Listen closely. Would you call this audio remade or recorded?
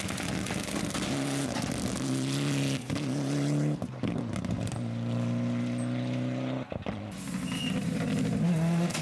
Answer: recorded